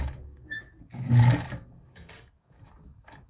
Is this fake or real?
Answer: fake